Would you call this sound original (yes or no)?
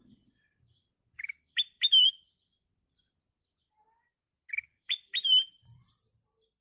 no